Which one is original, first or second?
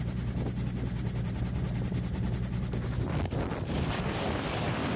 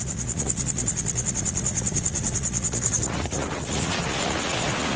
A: first